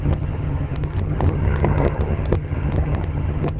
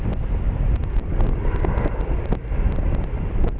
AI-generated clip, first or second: first